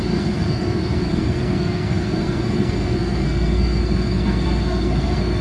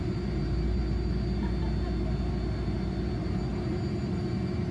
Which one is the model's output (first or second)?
first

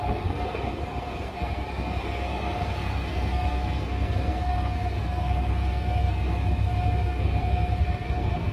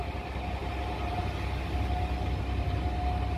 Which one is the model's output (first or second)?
first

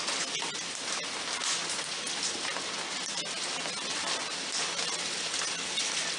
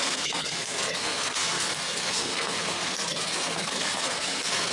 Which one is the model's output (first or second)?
second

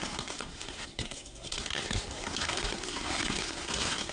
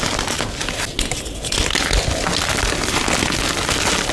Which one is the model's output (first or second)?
first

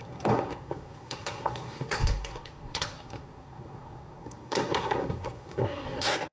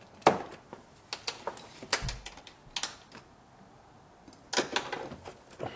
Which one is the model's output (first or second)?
first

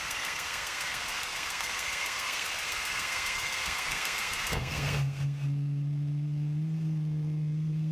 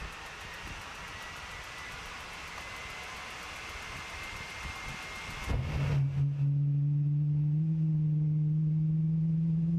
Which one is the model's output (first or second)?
first